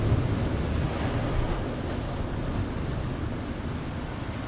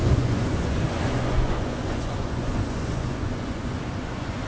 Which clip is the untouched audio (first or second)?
first